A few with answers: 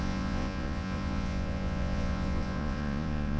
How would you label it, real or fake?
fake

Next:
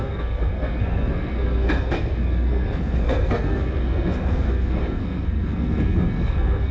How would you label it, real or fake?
fake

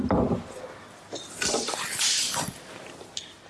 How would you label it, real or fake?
real